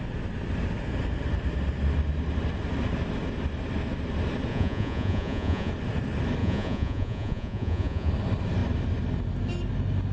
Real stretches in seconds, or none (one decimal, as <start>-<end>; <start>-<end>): 0.0-4.5; 5.7-6.4; 8.1-10.1